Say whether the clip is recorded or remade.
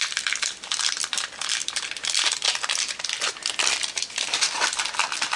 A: remade